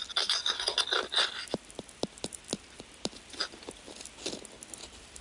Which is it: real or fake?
real